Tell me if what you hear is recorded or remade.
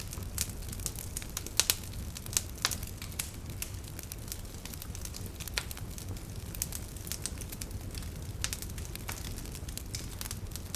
recorded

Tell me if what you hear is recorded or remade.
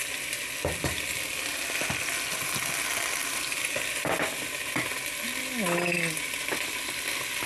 recorded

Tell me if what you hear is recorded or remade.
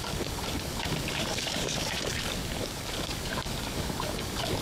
remade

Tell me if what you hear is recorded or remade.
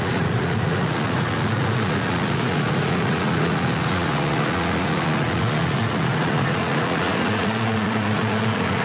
remade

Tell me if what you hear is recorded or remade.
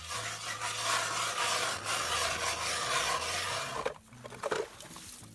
recorded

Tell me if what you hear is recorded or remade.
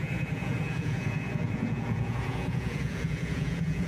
remade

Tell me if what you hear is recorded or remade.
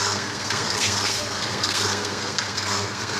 remade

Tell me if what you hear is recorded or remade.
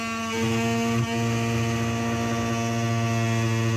recorded